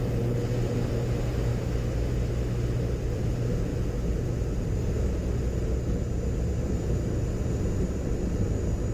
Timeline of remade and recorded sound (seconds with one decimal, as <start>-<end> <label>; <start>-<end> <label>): 0.0-8.9 recorded